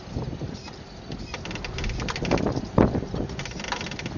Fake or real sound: real